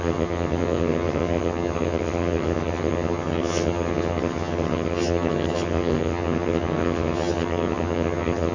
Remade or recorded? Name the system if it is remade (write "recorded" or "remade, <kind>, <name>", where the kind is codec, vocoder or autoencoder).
remade, vocoder, HiFi-GAN